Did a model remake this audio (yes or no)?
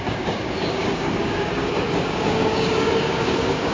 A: yes